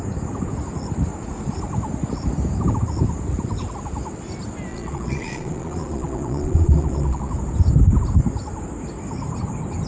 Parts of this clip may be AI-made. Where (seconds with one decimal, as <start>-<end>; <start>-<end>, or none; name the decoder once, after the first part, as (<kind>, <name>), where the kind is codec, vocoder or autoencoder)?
4.7-7.3 (vocoder, Vocos)